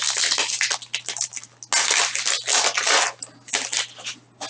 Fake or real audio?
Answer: real